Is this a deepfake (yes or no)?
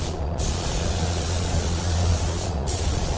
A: yes